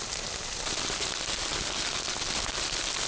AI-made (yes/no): no